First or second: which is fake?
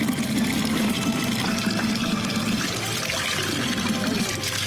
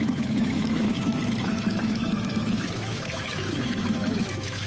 second